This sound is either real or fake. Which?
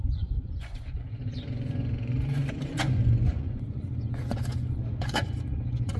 fake